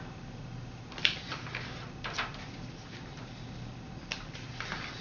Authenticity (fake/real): real